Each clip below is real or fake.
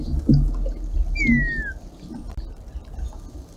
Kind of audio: real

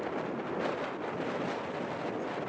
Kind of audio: real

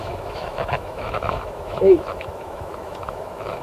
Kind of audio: fake